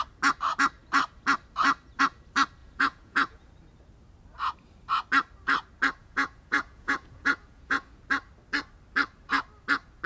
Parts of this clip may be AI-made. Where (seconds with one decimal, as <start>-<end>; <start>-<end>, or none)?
2.6-3.5; 6.0-8.0